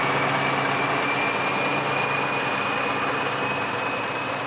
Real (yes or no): yes